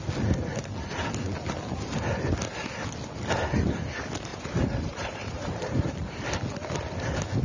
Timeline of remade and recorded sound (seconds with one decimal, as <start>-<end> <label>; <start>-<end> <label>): 0.0-4.3 recorded; 4.3-5.9 remade; 5.9-7.4 recorded